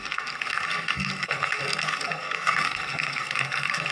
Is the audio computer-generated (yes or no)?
yes